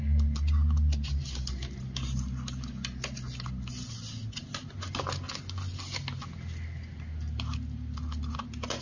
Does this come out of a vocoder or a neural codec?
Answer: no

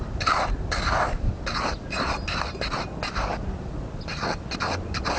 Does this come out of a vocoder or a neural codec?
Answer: no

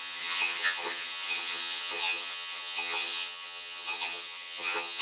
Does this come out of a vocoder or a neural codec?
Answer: yes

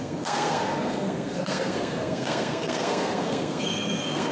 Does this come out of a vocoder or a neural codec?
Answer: yes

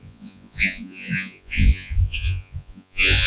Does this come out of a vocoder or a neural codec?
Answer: yes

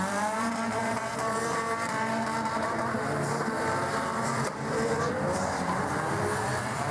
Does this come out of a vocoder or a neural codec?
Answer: yes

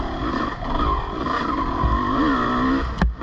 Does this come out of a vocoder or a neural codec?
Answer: no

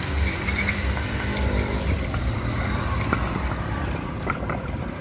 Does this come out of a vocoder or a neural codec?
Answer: yes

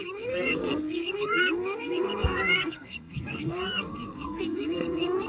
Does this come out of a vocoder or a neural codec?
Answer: yes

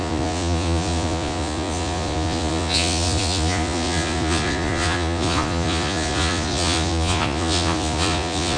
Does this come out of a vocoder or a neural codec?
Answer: yes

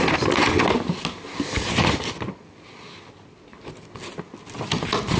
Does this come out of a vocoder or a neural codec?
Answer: no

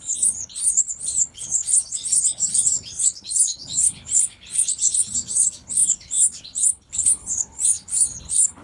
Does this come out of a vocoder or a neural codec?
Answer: yes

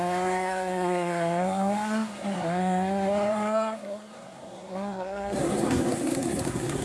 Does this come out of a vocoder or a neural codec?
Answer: yes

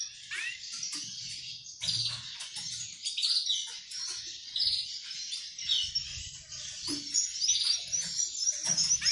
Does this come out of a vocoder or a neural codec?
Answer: no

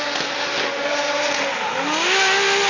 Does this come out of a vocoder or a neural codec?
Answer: no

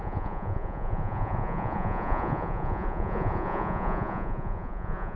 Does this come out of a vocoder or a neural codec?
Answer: yes